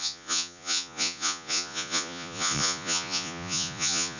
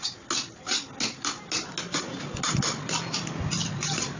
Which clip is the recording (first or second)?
second